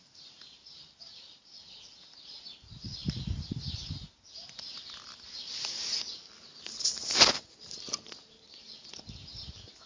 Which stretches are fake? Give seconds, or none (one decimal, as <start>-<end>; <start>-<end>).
none